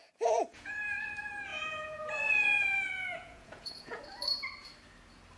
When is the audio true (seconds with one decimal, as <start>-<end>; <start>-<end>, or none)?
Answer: 0.8-1.5; 4.0-5.4